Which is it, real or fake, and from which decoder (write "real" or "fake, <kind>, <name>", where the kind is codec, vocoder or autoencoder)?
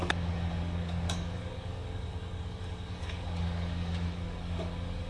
fake, codec, DAC